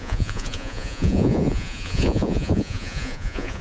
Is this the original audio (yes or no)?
no